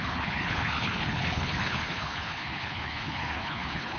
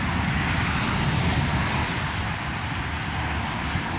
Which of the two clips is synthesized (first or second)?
first